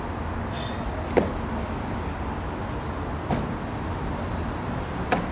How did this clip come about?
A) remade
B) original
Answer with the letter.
B